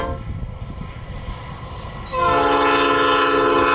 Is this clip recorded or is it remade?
recorded